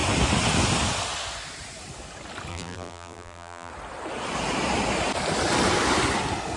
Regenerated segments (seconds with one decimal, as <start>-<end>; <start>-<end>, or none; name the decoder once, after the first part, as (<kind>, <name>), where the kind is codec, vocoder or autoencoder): 2.5-3.7 (vocoder, BigVGAN v2)